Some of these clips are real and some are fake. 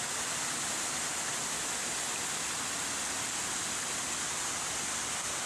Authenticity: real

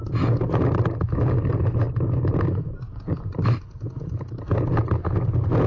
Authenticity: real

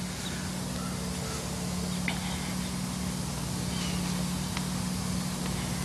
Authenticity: real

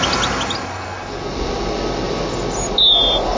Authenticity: real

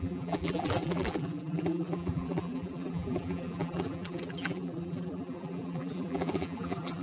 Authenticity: fake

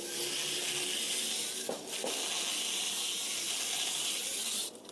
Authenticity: real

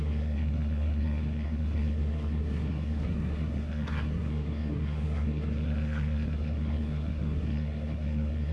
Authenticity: fake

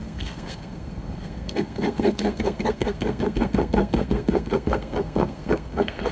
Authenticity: fake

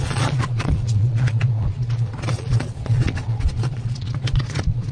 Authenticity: fake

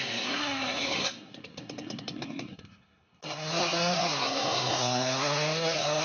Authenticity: fake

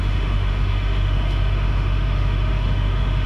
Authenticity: fake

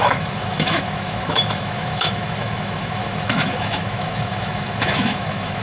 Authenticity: fake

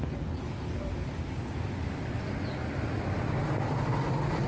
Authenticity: real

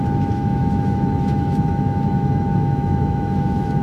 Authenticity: fake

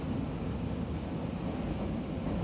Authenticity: real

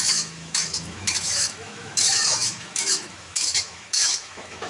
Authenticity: fake